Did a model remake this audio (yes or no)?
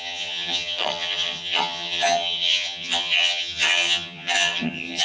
yes